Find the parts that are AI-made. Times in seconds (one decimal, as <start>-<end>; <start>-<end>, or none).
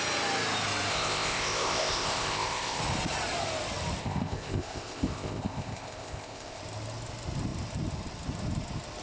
0.9-2.8; 4.0-6.6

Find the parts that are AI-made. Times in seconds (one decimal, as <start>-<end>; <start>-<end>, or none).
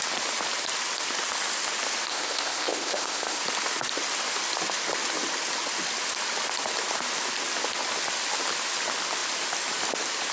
2.1-3.4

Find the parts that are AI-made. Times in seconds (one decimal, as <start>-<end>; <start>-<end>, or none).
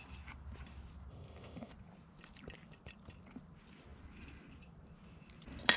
1.1-1.7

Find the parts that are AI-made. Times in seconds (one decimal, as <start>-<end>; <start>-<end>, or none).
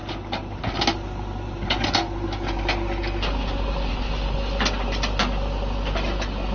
none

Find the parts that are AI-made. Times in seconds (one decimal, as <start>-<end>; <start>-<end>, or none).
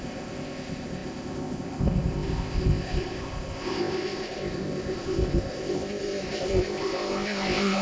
0.0-7.8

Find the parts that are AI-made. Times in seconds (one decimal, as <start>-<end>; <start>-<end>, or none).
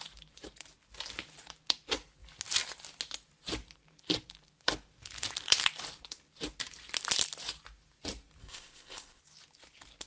8.4-9.2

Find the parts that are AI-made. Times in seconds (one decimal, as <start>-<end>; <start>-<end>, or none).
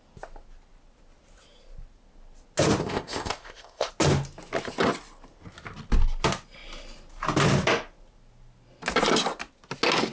2.8-3.9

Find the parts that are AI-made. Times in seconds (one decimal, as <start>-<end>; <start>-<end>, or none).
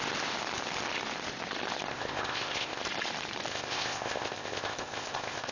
1.9-2.8; 3.5-5.5